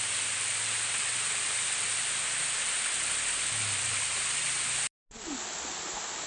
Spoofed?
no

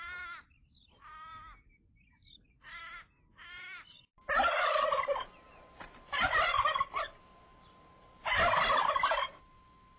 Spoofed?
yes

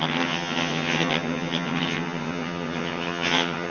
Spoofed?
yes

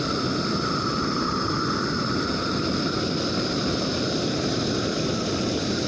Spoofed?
no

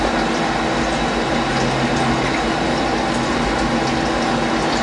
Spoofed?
no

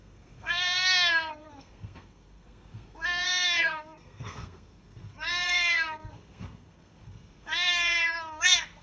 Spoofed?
yes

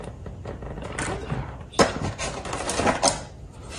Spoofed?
no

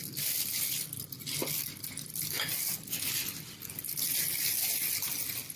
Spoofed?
no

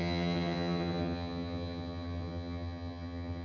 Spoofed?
yes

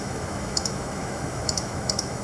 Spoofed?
yes